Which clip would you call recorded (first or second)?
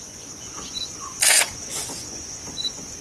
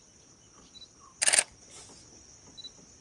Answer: second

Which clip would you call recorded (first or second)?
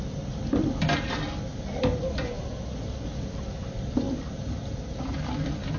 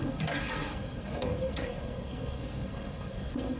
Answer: first